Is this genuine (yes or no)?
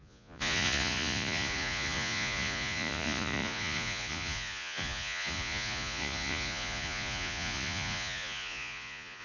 no